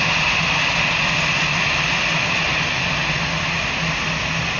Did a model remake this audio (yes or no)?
no